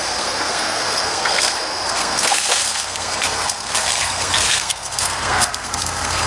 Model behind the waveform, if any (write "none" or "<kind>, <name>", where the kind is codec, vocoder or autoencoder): codec, SNAC